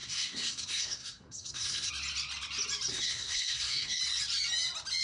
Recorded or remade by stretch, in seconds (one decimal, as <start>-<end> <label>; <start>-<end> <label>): 0.0-1.9 remade; 1.9-2.9 recorded; 2.9-4.0 remade; 4.0-5.0 recorded